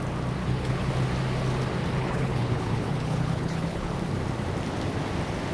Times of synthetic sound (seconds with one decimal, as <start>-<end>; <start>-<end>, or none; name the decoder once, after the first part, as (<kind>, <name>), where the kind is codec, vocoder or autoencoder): 0.4-0.9 (codec, HILCodec); 2.0-3.9